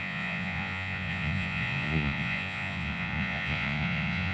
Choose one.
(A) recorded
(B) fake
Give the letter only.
B